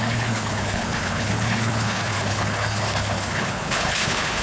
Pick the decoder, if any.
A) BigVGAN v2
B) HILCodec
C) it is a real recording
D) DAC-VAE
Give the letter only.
B